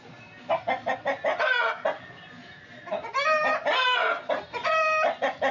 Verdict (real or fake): real